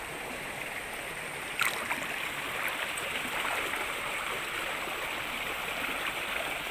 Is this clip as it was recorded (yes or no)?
yes